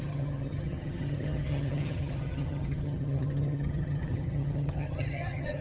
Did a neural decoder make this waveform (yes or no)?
yes